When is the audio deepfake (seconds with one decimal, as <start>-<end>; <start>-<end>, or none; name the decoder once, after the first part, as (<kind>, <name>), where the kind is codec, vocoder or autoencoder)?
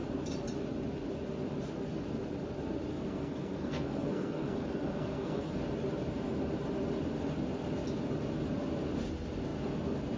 2.9-5.6 (codec, SNAC)